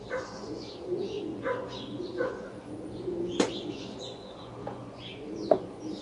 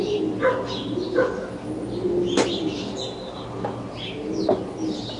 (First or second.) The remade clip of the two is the first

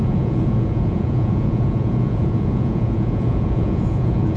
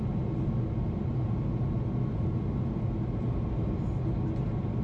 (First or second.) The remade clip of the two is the first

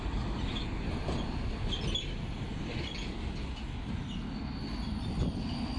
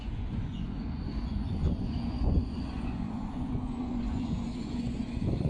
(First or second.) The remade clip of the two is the second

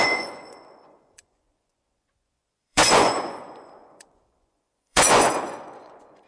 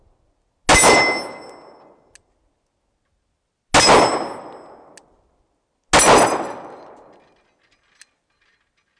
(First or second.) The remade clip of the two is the first